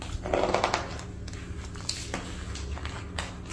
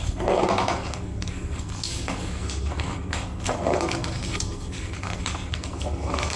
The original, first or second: first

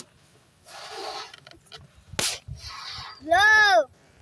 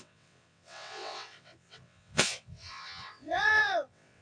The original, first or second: first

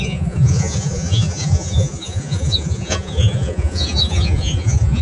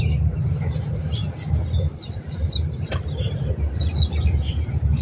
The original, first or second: second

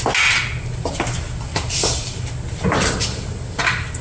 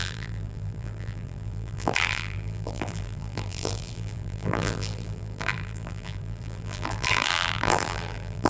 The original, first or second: first